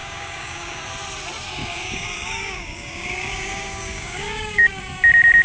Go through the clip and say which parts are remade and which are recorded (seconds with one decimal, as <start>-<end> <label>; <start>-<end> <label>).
0.0-0.8 remade; 0.8-1.6 recorded; 1.6-4.8 remade; 4.8-5.4 recorded